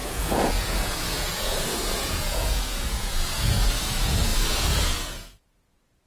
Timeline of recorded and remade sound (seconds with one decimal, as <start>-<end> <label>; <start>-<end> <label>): 0.0-6.1 remade